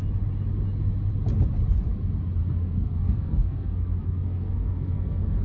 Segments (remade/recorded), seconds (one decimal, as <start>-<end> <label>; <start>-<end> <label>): 0.0-2.4 recorded; 2.4-5.4 remade